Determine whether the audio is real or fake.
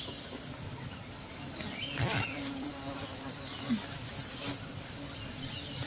real